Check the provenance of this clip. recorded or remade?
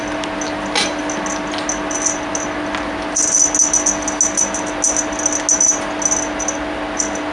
recorded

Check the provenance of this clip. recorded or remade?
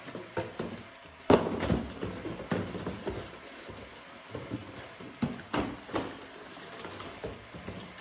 recorded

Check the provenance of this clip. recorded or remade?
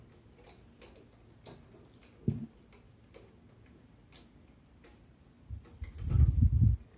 recorded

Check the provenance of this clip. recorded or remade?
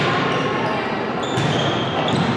recorded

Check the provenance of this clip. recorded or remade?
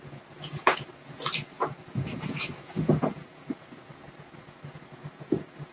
remade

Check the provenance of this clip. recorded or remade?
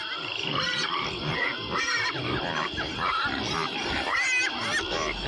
recorded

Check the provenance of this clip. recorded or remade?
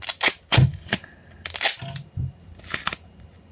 recorded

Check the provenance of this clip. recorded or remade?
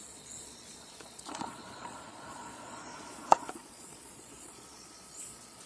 remade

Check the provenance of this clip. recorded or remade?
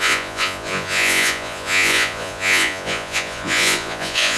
remade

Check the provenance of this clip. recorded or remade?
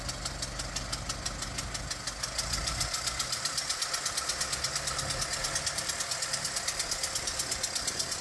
recorded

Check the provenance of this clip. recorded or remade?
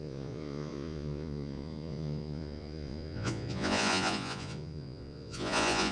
remade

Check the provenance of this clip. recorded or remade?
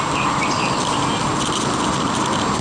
recorded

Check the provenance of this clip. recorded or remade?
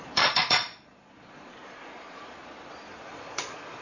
remade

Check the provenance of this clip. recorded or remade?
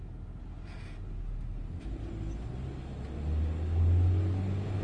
recorded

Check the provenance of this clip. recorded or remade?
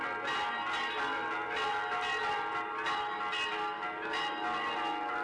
recorded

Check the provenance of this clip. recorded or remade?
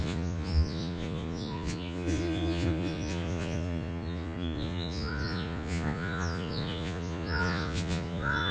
remade